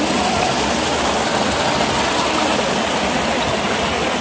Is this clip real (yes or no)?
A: yes